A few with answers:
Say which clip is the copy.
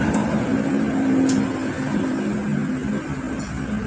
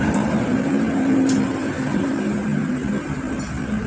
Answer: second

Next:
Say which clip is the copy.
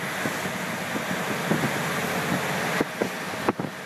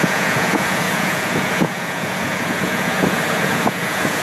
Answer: second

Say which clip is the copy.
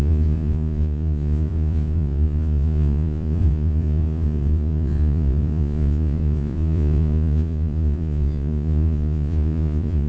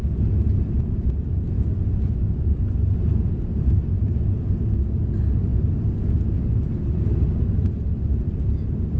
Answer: first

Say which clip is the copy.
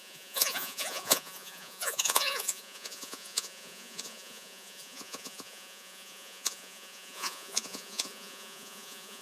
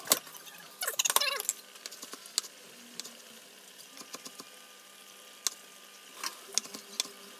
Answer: first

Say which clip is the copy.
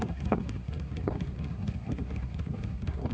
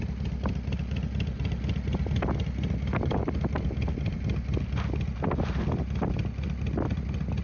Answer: first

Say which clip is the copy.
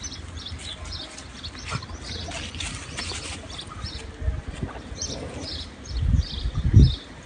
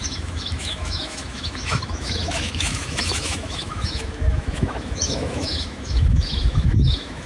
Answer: second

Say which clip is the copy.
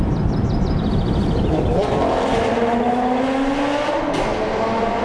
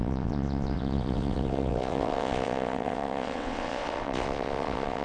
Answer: second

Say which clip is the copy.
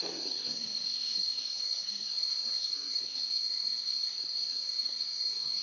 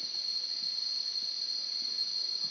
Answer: first